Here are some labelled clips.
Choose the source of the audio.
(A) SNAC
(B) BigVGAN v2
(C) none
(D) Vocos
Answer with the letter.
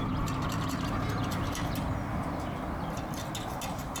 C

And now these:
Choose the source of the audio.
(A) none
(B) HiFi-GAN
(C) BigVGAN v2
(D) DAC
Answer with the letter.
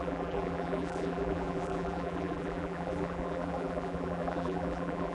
C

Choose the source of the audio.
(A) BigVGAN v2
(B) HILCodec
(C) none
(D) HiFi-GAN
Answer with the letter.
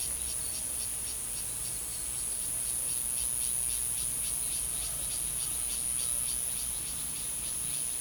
C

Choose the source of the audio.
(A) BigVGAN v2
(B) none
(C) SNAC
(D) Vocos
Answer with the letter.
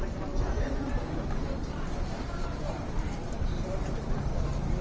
A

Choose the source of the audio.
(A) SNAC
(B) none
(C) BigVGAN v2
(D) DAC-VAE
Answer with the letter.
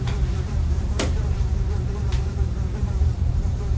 C